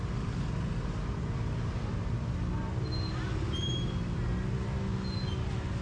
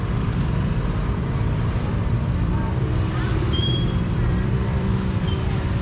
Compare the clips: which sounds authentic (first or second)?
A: first